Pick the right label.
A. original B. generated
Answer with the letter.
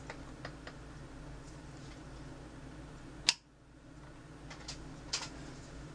A